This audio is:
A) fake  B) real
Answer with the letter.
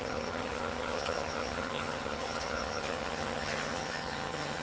A